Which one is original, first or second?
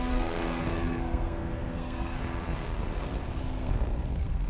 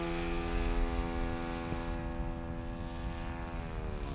second